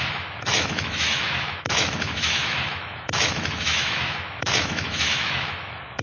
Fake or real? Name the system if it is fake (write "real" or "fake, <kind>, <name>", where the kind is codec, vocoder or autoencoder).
fake, autoencoder, DAC-VAE